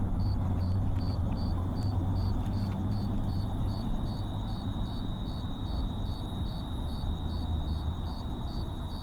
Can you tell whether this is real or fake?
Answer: fake